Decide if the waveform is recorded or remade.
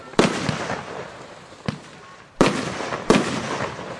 recorded